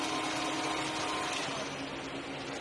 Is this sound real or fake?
real